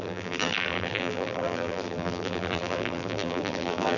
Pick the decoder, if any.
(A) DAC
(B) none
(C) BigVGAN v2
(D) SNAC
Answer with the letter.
C